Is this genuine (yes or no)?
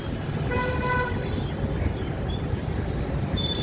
no